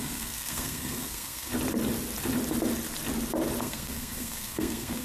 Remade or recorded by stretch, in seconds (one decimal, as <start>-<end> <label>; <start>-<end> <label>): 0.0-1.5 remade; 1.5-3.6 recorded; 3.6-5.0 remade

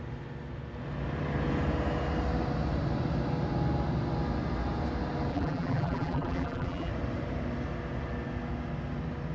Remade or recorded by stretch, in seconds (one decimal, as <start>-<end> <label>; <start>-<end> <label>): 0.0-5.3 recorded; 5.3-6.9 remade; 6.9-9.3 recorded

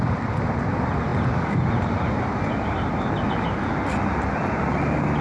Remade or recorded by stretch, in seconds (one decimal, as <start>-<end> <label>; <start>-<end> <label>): 0.0-5.2 recorded